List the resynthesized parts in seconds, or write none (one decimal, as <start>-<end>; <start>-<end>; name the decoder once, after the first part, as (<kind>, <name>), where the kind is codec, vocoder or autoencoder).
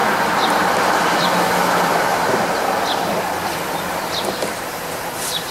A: 0.0-5.5 (vocoder, BigVGAN v2)